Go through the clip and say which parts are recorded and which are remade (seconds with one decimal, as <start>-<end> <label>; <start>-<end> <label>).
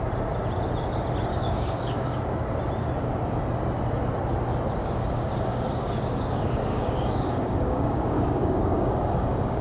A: 0.0-1.3 recorded; 1.3-2.2 remade; 2.2-4.8 recorded; 4.8-9.6 remade